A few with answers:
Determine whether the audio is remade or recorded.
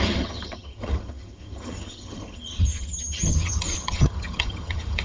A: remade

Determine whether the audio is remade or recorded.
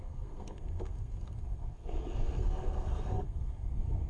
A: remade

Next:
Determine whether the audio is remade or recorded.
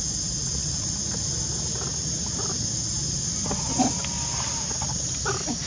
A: recorded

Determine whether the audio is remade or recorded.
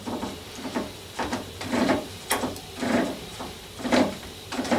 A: remade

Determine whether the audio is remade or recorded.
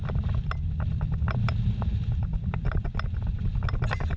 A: recorded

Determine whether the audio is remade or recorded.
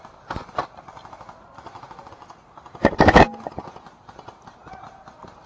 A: recorded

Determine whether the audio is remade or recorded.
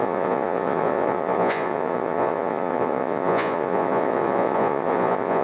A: remade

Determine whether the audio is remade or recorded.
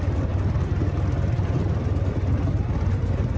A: recorded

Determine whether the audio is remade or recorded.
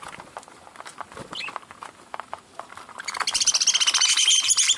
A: recorded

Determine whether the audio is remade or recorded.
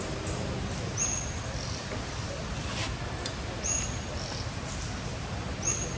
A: recorded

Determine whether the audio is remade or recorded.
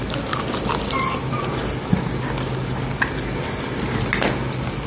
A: recorded